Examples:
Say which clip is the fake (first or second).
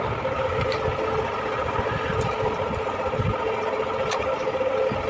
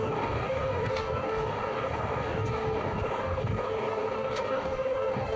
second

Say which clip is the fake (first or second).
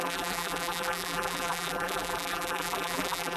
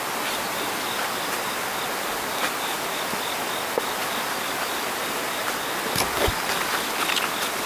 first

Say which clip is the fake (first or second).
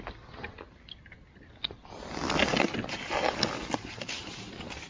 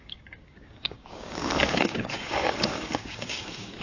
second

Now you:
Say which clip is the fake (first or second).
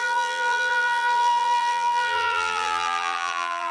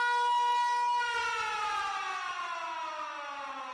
first